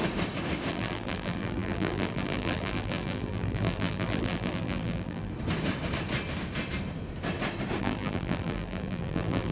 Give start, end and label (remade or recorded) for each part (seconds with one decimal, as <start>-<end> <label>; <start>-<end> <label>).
0.0-0.7 recorded; 0.7-5.3 remade; 5.3-7.8 recorded; 7.8-9.5 remade